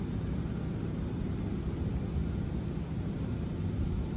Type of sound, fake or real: real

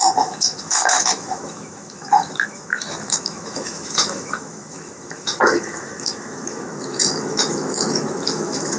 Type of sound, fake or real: fake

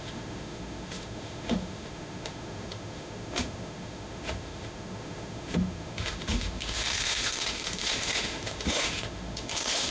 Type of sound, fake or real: fake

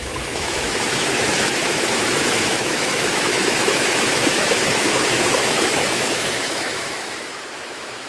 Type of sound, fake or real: fake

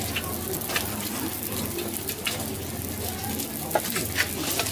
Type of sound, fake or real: real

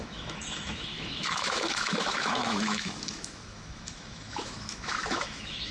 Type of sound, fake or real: fake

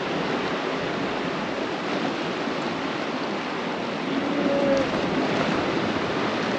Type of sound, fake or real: real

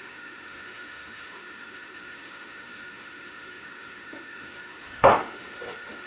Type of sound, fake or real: fake